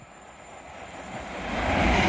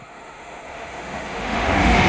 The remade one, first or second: second